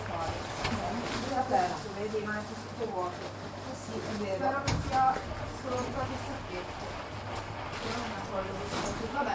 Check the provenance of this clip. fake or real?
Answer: real